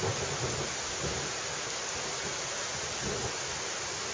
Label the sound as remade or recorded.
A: recorded